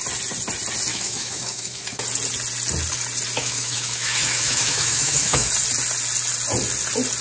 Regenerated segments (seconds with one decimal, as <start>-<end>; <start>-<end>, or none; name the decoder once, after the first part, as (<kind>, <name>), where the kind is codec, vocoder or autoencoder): 0.9-2.0 (autoencoder, DAC-VAE); 3.4-5.5